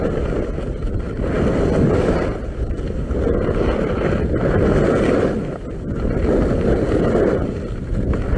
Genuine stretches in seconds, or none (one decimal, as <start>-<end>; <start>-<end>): 0.0-8.4